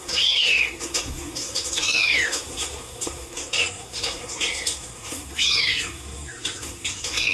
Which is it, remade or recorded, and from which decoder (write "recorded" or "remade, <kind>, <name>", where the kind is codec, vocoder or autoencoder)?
remade, codec, SNAC